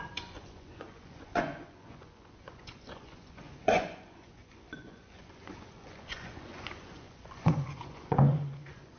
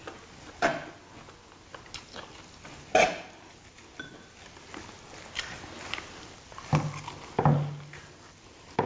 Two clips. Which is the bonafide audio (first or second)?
second